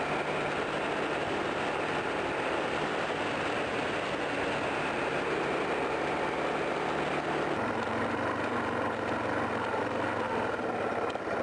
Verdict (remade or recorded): recorded